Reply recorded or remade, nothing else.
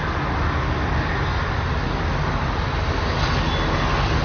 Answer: recorded